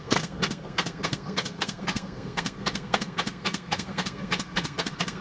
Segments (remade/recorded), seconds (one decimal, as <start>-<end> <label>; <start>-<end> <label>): 0.0-5.2 remade